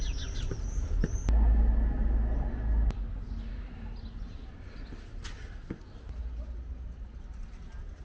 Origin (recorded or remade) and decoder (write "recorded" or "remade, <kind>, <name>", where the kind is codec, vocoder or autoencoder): recorded